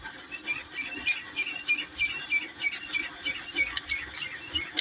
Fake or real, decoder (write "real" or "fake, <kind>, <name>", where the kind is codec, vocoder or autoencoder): real